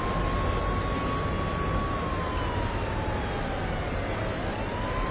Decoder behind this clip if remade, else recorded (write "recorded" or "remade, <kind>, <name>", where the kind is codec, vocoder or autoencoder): recorded